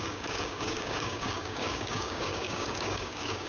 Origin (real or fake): fake